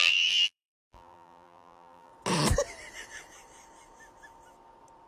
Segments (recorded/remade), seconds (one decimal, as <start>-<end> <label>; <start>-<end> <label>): 0.0-2.1 remade; 2.1-5.1 recorded